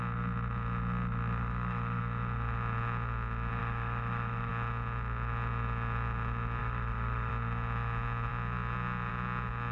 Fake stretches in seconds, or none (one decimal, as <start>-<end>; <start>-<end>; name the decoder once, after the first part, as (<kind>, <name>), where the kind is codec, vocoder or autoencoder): 1.4-2.0 (autoencoder, DAC-VAE); 3.6-4.5; 6.6-7.3